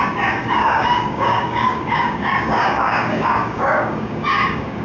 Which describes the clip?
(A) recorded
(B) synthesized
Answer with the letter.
B